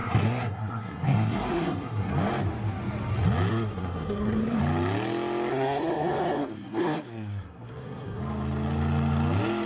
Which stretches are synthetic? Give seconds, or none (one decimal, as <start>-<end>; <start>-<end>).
0.0-2.1; 3.5-4.6; 5.5-8.2